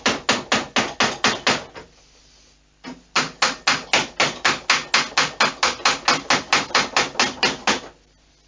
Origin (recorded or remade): recorded